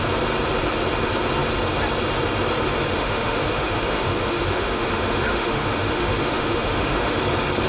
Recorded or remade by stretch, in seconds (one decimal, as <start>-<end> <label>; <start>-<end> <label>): 0.0-2.9 recorded; 2.9-7.2 remade; 7.2-7.7 recorded